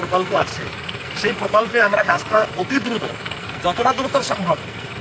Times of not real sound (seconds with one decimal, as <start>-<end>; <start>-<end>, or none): 0.0-5.0